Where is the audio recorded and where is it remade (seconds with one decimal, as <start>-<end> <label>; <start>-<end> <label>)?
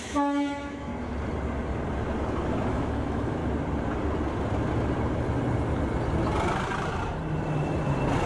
0.0-0.9 remade; 0.9-2.7 recorded; 2.7-3.4 remade; 3.4-8.3 recorded